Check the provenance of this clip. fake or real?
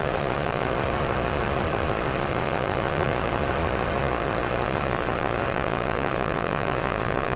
fake